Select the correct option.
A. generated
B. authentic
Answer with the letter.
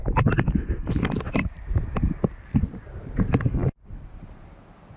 B